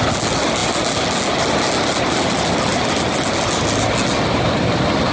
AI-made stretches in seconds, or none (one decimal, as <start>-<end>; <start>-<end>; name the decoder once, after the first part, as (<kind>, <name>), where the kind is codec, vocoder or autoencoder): none